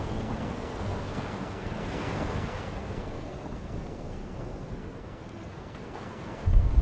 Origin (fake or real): fake